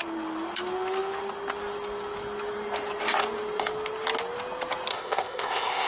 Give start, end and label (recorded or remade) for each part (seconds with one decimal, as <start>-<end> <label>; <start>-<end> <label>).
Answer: 0.0-4.9 recorded; 4.9-5.9 remade